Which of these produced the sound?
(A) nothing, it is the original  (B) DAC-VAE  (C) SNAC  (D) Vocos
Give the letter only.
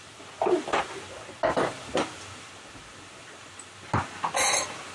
A